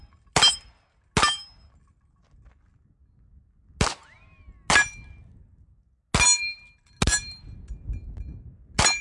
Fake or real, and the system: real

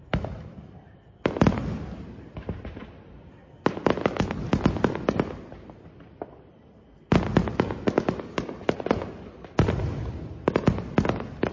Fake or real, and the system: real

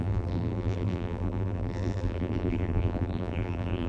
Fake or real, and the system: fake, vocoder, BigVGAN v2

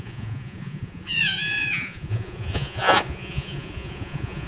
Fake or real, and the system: fake, vocoder, Vocos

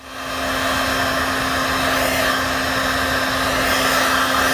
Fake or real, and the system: real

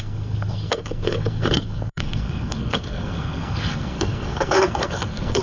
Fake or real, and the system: fake, codec, SNAC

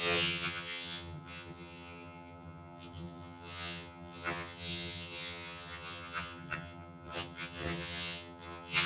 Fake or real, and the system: fake, vocoder, HiFi-GAN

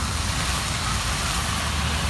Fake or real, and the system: real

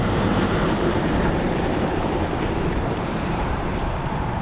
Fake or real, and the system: fake, vocoder, BigVGAN v2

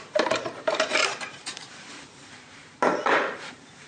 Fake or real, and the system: fake, vocoder, BigVGAN v2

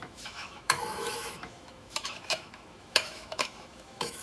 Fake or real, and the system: fake, autoencoder, DAC-VAE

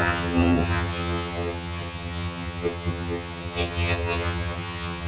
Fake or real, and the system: fake, vocoder, HiFi-GAN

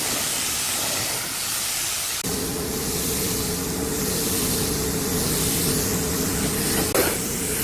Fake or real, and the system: real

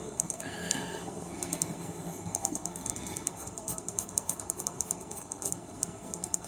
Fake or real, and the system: fake, codec, SNAC